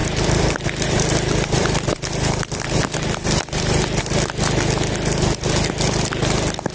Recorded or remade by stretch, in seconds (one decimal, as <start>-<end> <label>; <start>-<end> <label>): 0.0-4.0 remade; 4.0-6.7 recorded